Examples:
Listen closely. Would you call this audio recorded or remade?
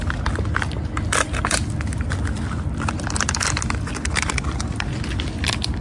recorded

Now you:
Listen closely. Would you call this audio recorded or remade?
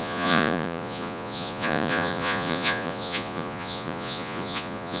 remade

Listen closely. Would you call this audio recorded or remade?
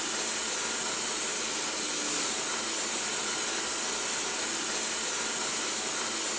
recorded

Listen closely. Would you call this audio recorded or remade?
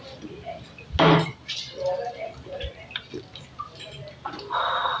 recorded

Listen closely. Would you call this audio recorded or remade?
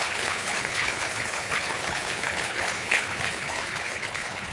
remade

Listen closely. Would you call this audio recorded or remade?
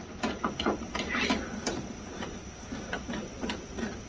recorded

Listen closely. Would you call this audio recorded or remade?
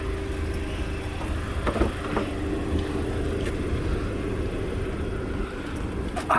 recorded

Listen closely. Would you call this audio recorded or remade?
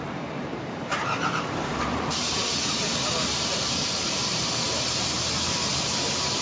remade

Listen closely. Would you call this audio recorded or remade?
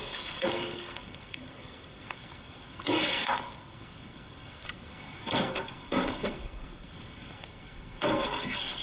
remade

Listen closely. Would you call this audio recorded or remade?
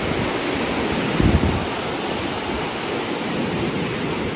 recorded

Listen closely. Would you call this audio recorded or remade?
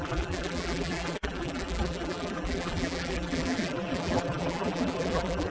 remade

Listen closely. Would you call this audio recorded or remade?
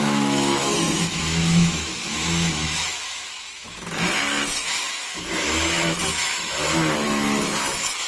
remade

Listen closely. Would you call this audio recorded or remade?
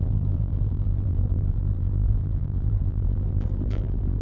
remade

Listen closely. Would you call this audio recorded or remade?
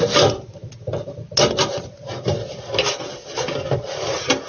recorded